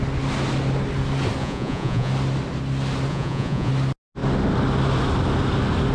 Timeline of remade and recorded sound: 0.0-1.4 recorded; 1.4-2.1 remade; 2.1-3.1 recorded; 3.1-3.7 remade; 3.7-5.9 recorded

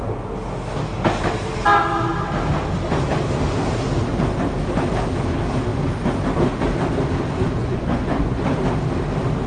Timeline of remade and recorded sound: 0.0-7.6 recorded; 7.6-8.4 remade; 8.4-9.5 recorded

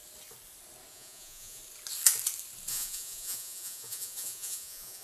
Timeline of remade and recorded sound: 0.0-0.9 recorded; 0.9-1.6 remade; 1.6-2.7 recorded; 2.7-5.0 remade

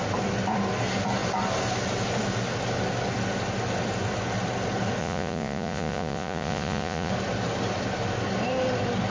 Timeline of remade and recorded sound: 0.0-5.0 recorded; 5.0-7.1 remade; 7.1-9.1 recorded

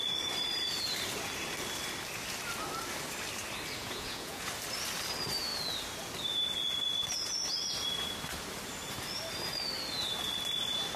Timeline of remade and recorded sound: 0.0-3.8 recorded; 3.8-4.5 remade; 4.5-11.0 recorded

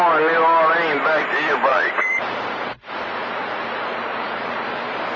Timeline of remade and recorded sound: 0.0-1.7 recorded; 1.7-4.8 remade; 4.8-5.2 recorded

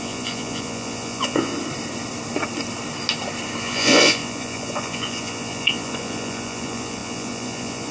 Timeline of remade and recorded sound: 0.0-1.5 remade; 1.5-3.6 recorded; 3.6-7.9 remade

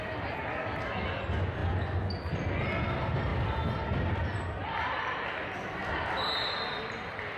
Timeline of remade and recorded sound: 0.0-7.4 recorded